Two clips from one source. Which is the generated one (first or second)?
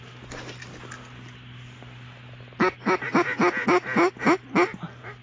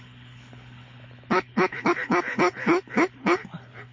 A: second